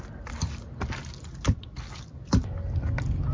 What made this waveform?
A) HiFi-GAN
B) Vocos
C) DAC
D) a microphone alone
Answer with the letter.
D